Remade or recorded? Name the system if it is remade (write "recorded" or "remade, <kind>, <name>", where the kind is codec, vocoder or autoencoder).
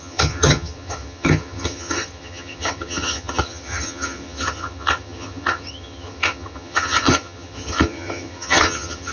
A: remade, vocoder, HiFi-GAN